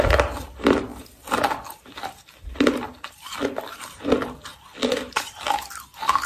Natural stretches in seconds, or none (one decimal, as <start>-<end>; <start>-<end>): 0.9-2.1; 4.5-5.1